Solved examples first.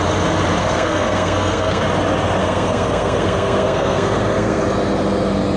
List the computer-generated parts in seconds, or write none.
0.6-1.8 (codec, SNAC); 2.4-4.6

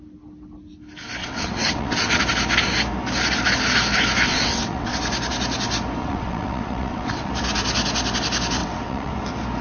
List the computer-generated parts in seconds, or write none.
1.2-2.2 (vocoder, WaveNeXt); 4.3-4.9; 6.0-7.3; 8.6-9.1